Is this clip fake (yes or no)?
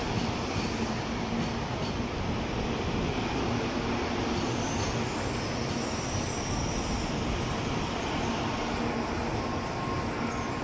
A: no